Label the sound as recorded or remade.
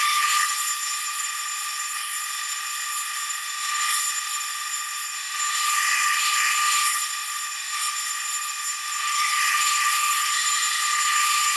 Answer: remade